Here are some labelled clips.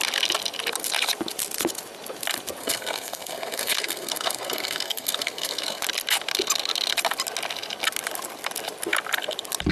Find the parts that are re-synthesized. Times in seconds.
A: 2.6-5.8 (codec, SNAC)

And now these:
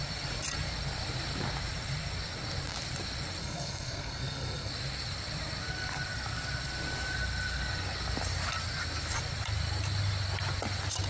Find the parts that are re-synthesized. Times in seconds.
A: 3.4-4.7 (codec, SNAC)

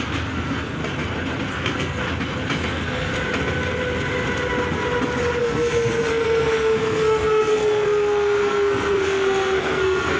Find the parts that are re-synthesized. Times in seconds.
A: 0.0-0.8 (codec, SNAC); 1.5-2.0; 2.7-3.1; 5.4-10.2